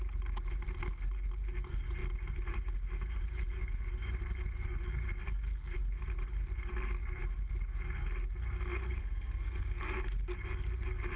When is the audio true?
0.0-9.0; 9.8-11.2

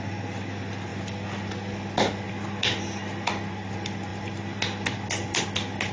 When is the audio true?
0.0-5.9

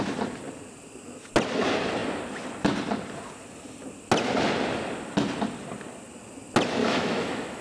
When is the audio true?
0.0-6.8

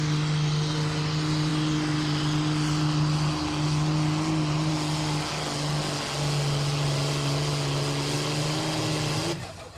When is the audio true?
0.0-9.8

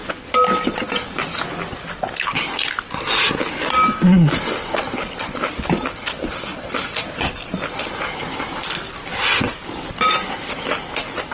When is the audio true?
0.0-11.3

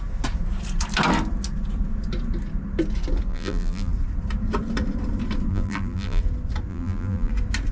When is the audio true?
0.0-3.3; 3.9-5.5; 6.2-6.7; 7.3-7.7

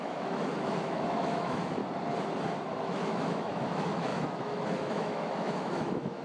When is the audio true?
1.8-2.8

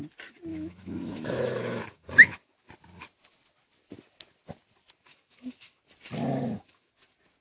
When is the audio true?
0.0-0.5; 2.7-5.1; 5.8-6.3; 6.9-7.4